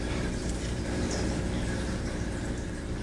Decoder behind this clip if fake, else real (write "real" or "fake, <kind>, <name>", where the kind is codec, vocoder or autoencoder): fake, vocoder, BigVGAN v2